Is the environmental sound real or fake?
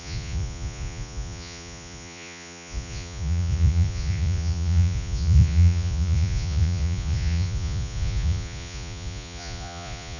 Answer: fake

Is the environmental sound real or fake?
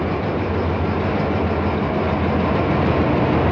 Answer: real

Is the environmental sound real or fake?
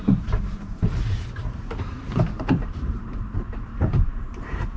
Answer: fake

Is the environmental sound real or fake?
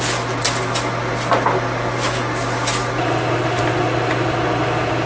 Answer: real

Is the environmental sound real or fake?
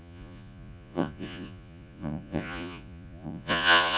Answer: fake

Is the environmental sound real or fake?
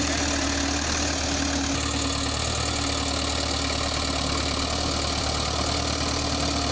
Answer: real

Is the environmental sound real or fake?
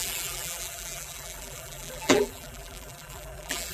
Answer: fake